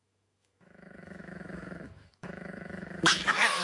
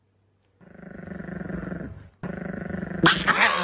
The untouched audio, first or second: second